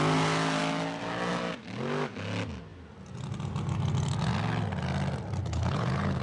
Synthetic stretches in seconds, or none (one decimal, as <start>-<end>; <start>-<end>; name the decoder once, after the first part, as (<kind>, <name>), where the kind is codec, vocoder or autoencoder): 5.4-6.2 (codec, HILCodec)